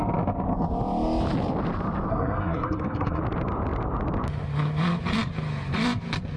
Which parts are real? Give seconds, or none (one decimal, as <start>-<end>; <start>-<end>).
0.0-2.1; 3.2-6.4